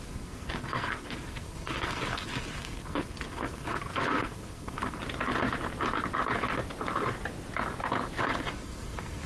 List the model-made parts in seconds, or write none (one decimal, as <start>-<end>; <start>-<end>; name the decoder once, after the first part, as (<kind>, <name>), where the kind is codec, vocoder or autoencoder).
0.0-5.0 (codec, SNAC); 8.5-9.3